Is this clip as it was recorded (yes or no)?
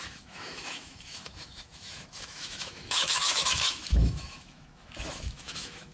no